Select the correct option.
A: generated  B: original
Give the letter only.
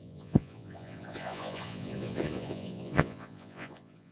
A